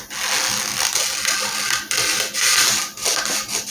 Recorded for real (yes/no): yes